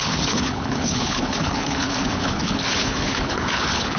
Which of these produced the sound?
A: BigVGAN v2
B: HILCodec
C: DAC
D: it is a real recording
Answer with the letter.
B